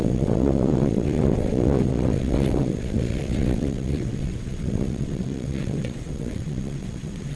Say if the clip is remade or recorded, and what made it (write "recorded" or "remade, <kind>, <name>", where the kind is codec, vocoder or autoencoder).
remade, vocoder, WaveNeXt